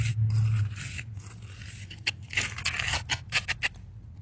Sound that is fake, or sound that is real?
real